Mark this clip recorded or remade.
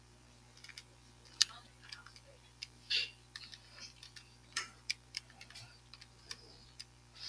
remade